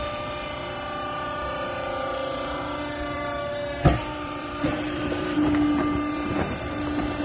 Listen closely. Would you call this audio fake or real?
fake